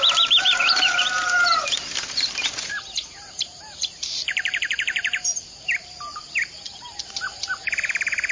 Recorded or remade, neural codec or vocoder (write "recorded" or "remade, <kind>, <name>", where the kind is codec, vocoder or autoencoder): remade, vocoder, BigVGAN v2